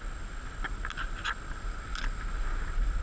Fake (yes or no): no